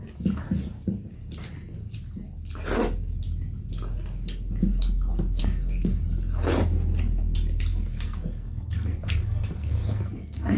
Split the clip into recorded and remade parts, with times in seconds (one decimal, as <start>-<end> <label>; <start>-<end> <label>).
0.0-5.4 recorded; 5.4-6.0 remade; 6.0-7.7 recorded; 7.7-10.6 remade